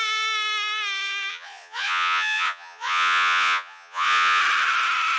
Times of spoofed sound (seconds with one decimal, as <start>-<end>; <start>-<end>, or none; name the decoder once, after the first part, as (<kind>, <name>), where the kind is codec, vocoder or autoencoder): 1.3-4.4 (vocoder, Vocos)